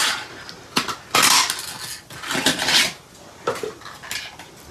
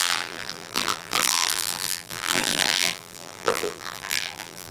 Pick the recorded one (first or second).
first